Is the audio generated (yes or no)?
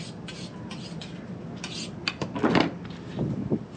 no